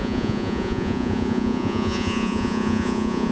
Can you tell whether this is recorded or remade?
remade